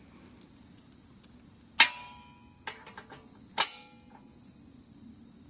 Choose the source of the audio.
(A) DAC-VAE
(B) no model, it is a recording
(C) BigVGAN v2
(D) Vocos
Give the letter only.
B